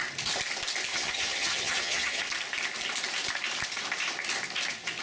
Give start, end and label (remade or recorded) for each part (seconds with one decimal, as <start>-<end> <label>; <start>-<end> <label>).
0.0-0.9 recorded; 0.9-2.2 remade; 2.2-5.0 recorded